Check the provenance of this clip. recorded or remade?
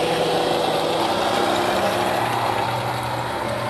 recorded